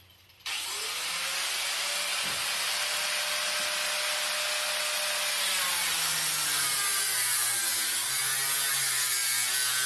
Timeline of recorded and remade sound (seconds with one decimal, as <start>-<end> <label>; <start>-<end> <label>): 0.0-9.9 recorded